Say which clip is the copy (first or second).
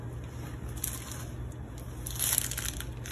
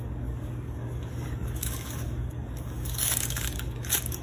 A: second